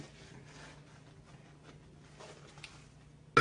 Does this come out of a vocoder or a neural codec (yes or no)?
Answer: no